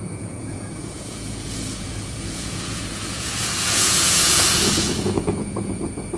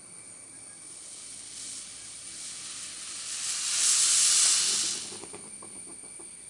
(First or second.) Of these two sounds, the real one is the second